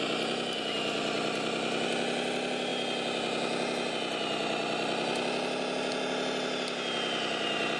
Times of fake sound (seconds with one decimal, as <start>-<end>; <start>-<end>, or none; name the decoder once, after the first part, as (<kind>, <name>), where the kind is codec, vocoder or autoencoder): none